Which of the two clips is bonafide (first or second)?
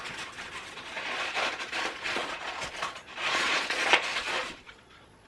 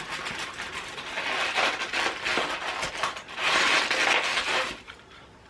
second